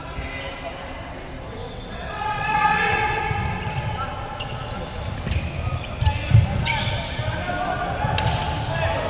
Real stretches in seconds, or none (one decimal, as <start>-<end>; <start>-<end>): 0.0-1.5; 3.2-9.1